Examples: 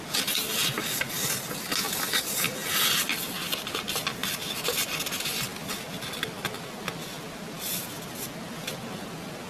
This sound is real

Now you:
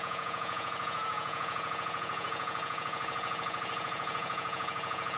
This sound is fake